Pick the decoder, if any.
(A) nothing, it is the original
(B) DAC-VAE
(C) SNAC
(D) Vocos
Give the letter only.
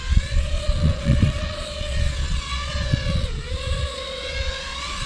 D